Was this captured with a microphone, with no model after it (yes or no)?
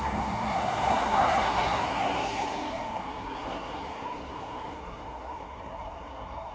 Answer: no